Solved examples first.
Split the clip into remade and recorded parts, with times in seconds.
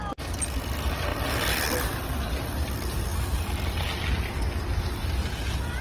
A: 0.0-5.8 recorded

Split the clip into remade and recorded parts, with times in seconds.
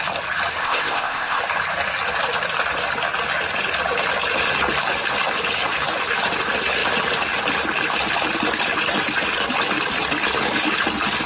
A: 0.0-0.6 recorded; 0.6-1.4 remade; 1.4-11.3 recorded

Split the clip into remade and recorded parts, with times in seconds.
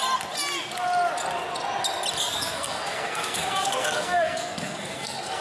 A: 0.0-2.2 recorded; 2.2-5.4 remade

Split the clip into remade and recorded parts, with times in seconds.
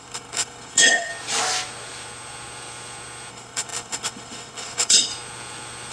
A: 0.0-1.1 remade; 1.1-3.3 recorded; 3.3-5.1 remade; 5.1-5.9 recorded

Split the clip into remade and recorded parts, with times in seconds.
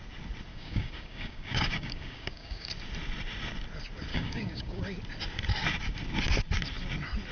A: 0.0-0.5 recorded; 0.5-2.7 remade; 2.7-4.1 recorded; 4.1-4.8 remade; 4.8-7.3 recorded